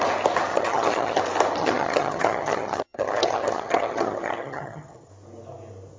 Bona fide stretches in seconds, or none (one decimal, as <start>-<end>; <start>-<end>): 0.0-0.5; 1.2-1.6; 5.1-6.0